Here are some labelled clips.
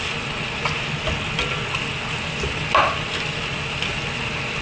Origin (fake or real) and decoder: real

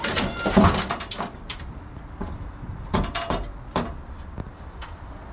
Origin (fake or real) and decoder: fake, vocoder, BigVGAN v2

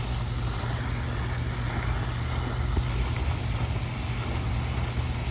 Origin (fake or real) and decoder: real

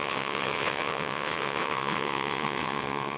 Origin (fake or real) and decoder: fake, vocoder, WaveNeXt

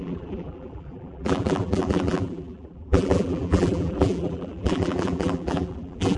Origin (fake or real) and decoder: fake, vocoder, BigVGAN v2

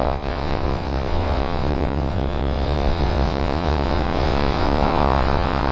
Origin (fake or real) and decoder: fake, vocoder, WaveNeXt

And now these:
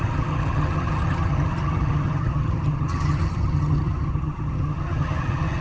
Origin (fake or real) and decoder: fake, vocoder, HiFi-GAN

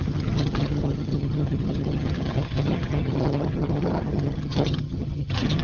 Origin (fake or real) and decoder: fake, vocoder, HiFi-GAN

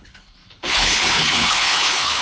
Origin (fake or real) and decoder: fake, codec, HILCodec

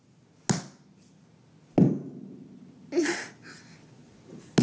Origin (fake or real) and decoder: real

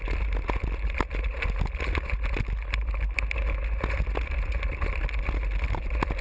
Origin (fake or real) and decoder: real